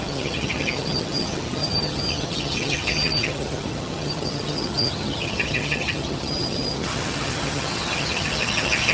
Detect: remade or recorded remade